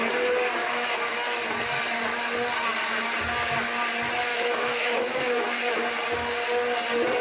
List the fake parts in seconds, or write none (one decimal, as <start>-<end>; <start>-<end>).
0.6-1.1; 4.3-5.4